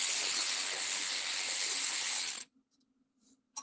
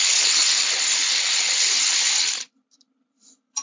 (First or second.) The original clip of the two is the first